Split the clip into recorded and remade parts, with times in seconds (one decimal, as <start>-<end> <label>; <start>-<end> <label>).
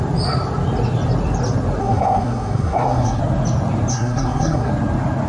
0.0-1.8 recorded; 1.8-3.2 remade; 3.2-3.9 recorded; 3.9-4.7 remade; 4.7-5.3 recorded